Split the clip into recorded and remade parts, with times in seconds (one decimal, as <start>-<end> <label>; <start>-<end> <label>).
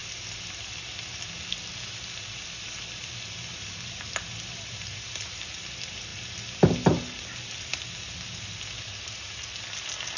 0.0-10.2 recorded